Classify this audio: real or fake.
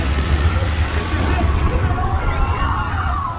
fake